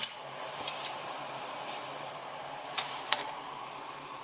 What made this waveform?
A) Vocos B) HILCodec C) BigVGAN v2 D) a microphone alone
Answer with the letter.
D